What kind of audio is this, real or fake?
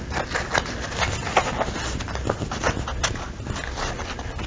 real